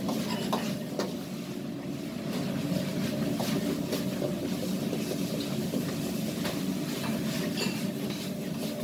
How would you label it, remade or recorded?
recorded